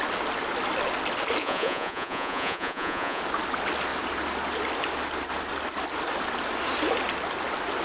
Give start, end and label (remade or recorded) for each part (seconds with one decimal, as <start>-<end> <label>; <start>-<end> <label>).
0.0-1.4 recorded; 1.4-3.2 remade; 3.2-7.8 recorded